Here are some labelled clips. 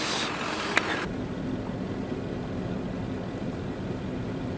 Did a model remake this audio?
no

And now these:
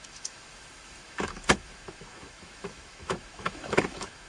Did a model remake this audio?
yes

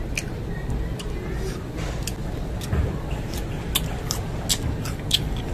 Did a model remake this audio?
no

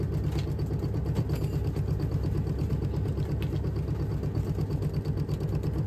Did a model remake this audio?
no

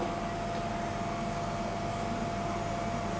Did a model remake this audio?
no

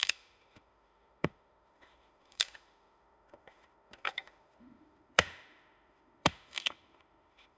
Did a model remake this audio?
yes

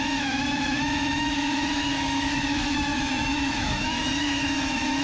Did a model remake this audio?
yes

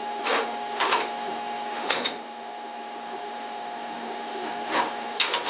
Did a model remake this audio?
yes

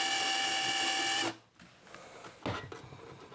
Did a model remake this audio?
no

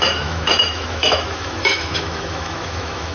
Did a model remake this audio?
yes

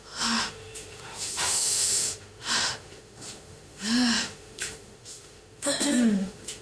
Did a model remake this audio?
yes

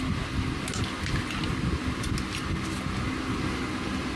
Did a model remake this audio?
no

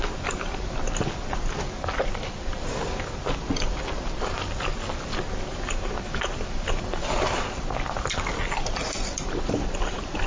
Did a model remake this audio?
no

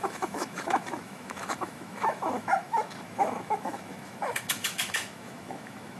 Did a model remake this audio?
yes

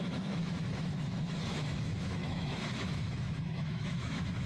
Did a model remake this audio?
yes